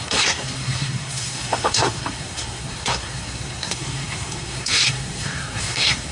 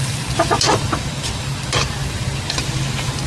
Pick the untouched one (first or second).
second